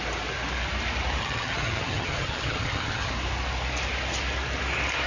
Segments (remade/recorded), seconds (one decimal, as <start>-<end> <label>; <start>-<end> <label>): 0.0-1.2 recorded; 1.2-3.1 remade; 3.1-5.1 recorded